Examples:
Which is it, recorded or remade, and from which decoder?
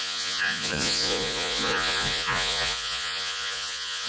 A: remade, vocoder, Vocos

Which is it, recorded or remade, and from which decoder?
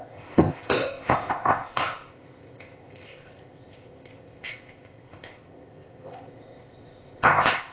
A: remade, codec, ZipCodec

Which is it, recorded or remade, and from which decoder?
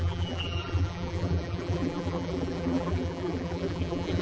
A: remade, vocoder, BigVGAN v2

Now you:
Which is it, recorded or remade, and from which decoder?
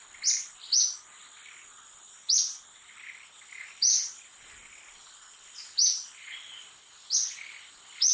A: recorded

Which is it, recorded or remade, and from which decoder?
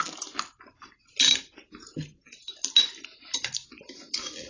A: recorded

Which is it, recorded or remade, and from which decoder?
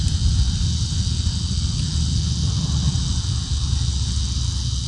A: recorded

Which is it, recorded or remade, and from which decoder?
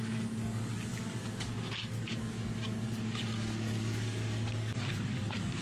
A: remade, codec, DAC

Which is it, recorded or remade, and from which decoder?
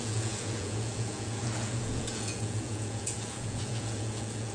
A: remade, vocoder, Vocos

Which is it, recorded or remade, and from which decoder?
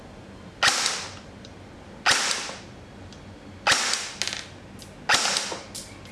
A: recorded